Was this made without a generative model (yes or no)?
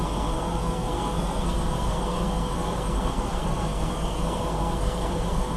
no